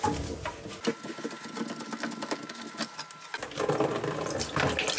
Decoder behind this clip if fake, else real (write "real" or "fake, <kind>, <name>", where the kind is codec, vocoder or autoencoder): real